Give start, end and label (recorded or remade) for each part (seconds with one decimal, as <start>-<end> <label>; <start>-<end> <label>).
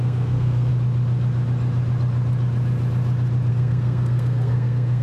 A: 0.0-0.7 remade; 0.7-3.5 recorded; 3.5-5.0 remade